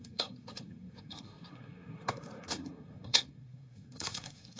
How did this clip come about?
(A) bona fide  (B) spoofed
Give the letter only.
B